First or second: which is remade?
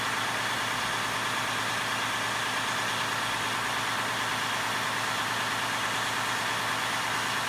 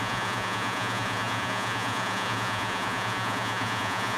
second